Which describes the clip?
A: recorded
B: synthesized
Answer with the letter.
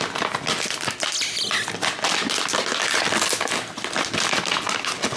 A